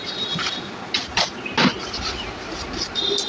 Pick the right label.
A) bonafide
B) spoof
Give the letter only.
A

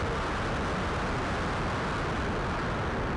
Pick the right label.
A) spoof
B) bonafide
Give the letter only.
B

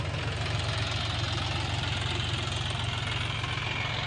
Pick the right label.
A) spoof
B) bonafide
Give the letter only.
B